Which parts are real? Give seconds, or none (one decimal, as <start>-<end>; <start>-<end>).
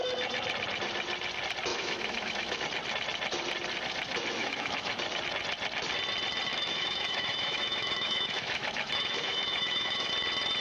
0.0-1.7; 2.6-4.4; 5.0-6.5; 10.1-10.6